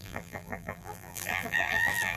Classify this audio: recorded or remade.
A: remade